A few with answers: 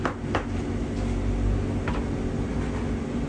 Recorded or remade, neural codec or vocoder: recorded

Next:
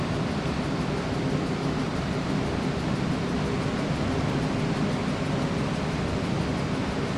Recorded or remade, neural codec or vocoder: recorded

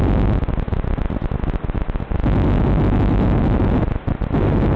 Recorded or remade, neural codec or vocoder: recorded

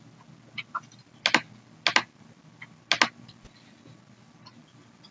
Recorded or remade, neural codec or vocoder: recorded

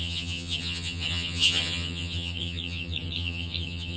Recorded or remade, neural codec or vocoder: remade, vocoder, HiFi-GAN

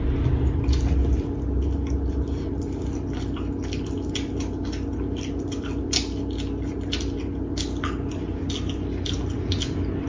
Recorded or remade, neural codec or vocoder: recorded